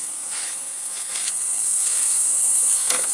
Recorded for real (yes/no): no